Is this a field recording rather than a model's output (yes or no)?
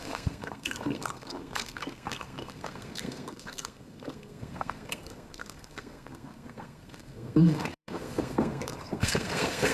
no